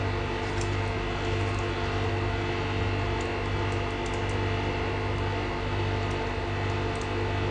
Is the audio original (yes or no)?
yes